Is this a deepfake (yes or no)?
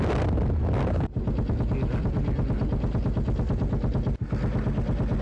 no